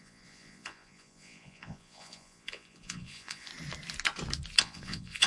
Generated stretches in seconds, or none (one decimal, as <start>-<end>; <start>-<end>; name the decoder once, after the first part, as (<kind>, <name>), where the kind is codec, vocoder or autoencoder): 0.0-3.5 (vocoder, Vocos); 4.6-5.3